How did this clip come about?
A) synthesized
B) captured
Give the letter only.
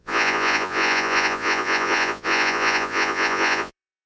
A